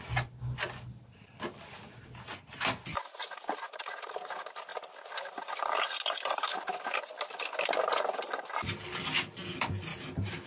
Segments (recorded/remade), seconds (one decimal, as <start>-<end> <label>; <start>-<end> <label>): 0.0-3.1 recorded; 3.1-4.0 remade; 4.0-9.9 recorded; 9.9-10.5 remade